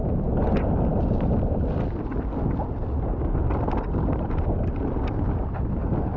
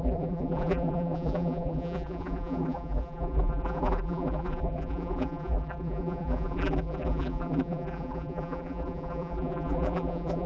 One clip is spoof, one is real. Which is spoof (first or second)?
second